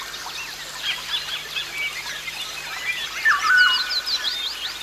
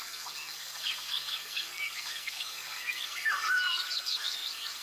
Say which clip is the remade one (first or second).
second